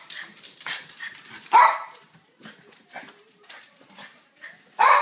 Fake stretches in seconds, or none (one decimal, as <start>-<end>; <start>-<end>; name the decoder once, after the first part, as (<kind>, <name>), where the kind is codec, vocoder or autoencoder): none